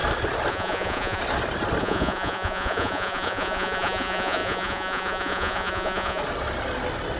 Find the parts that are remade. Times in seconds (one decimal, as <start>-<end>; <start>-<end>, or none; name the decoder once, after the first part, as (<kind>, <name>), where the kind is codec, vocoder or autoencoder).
0.5-1.2 (vocoder, Vocos); 1.8-6.2